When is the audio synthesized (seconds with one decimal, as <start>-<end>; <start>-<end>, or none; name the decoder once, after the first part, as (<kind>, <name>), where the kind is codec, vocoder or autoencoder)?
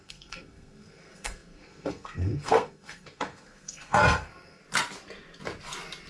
0.0-4.6 (codec, SNAC)